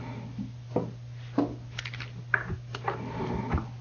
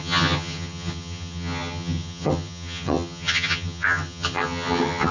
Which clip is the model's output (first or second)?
second